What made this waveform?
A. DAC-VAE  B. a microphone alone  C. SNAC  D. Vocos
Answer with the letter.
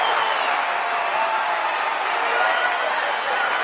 B